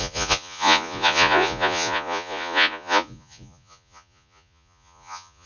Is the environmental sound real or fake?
fake